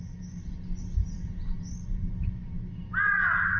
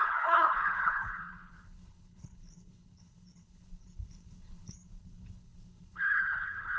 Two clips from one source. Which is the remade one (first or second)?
second